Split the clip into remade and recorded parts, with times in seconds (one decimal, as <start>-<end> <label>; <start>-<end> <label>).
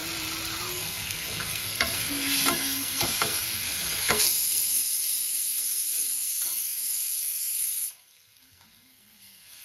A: 0.0-0.7 recorded; 0.7-9.6 remade